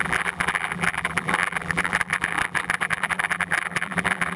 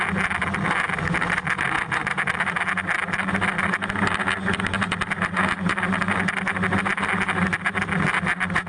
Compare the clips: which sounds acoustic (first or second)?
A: second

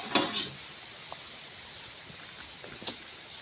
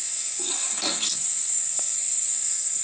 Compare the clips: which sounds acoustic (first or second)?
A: first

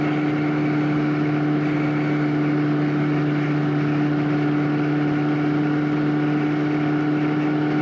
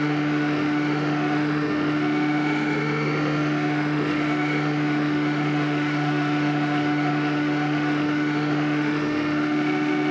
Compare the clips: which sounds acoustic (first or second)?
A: first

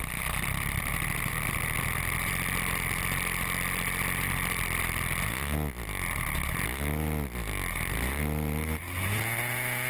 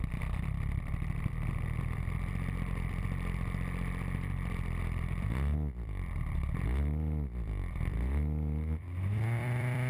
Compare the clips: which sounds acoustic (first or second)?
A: first